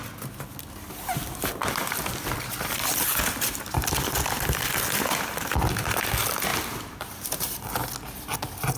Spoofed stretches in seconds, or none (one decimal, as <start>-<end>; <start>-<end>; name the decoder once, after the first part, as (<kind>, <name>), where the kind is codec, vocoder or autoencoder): 6.5-7.6 (vocoder, BigVGAN v2)